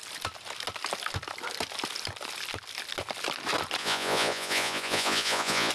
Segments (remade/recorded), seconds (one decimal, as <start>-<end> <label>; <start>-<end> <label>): 0.0-3.8 recorded; 3.8-5.7 remade